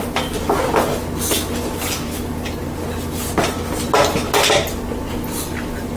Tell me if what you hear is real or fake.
real